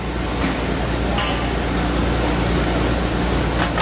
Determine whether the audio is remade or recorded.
recorded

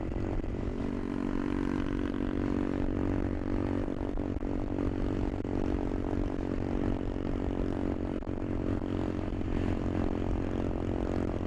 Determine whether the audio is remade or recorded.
remade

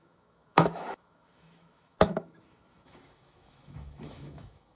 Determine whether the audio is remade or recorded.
remade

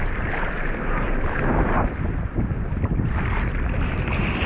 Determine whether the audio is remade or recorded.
recorded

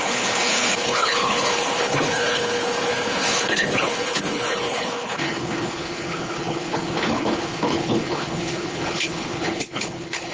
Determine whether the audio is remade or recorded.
remade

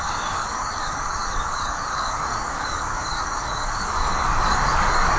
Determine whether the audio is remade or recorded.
remade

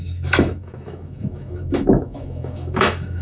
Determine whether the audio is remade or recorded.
remade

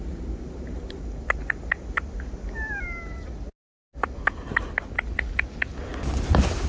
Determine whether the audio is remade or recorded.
recorded